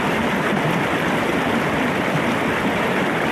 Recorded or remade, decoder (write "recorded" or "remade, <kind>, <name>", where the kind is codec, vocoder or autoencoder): recorded